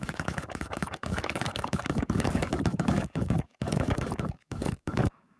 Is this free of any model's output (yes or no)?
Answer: no